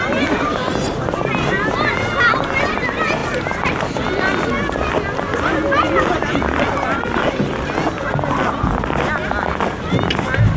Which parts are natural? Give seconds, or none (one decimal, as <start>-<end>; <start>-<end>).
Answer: 0.0-10.6